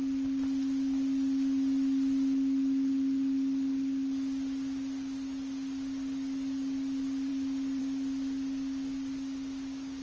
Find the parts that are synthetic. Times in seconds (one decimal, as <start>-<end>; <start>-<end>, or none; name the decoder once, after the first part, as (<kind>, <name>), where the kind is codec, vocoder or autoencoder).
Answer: none